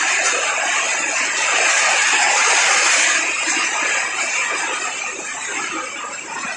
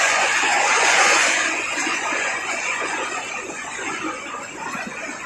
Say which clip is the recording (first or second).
first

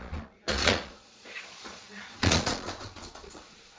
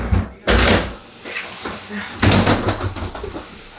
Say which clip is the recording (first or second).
second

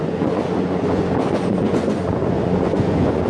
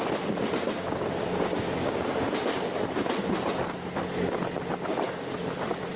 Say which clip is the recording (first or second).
second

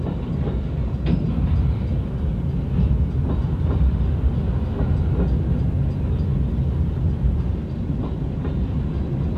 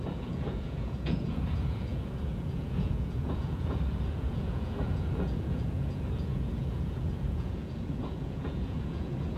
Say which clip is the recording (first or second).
first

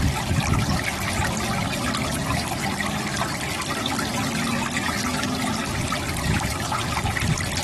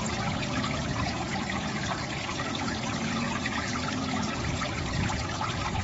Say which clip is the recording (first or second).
first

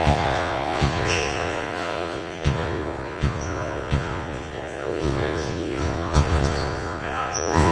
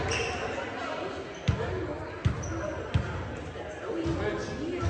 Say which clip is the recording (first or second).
second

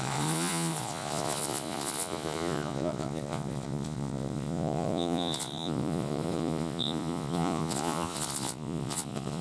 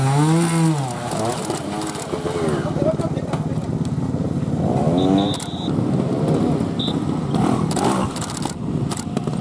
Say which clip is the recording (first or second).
second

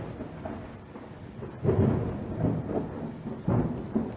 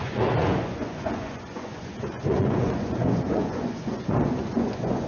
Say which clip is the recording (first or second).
first